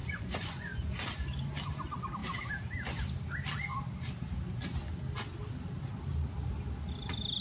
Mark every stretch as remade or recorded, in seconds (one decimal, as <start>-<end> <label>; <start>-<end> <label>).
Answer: 0.0-1.0 remade; 1.0-7.4 recorded